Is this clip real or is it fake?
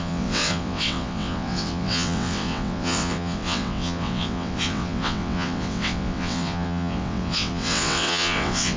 fake